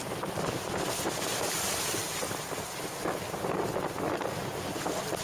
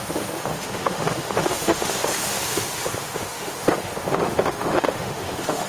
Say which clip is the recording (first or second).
first